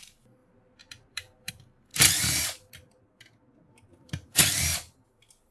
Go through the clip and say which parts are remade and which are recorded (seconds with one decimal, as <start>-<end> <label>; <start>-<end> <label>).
0.0-0.4 recorded; 0.4-1.5 remade; 1.5-1.9 recorded; 1.9-3.2 remade; 3.2-3.9 recorded; 3.9-4.4 remade; 4.4-5.5 recorded

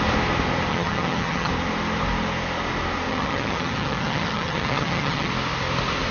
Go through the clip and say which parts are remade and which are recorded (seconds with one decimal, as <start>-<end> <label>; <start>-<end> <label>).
0.0-0.7 recorded; 0.7-1.5 remade; 1.5-3.1 recorded; 3.1-5.3 remade; 5.3-6.1 recorded

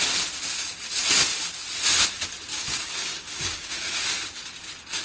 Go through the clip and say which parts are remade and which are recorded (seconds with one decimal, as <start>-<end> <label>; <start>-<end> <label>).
0.0-2.5 recorded; 2.5-4.0 remade; 4.0-5.0 recorded

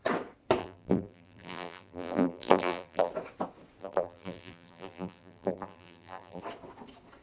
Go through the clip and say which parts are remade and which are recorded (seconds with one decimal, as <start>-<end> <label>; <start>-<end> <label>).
0.0-0.6 recorded; 0.6-3.1 remade; 3.1-3.8 recorded; 3.8-6.4 remade; 6.4-7.2 recorded

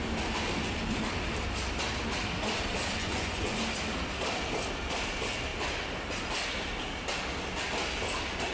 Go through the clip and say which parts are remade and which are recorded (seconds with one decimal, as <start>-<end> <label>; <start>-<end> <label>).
0.0-3.0 recorded; 3.0-3.6 remade; 3.6-8.5 recorded

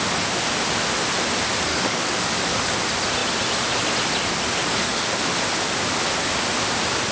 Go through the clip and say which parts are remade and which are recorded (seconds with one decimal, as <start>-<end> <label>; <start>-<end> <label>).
0.0-1.7 recorded; 1.7-2.7 remade; 2.7-4.6 recorded; 4.6-5.2 remade; 5.2-7.1 recorded

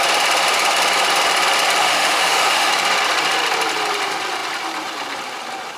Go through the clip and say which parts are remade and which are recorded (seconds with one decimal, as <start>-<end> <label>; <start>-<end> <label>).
0.0-1.8 recorded; 1.8-2.7 remade; 2.7-5.8 recorded

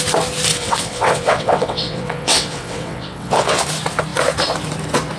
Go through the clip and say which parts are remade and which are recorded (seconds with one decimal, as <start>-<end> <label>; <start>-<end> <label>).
0.0-0.5 recorded; 0.5-3.6 remade; 3.6-5.2 recorded